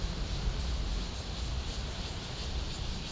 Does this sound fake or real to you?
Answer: real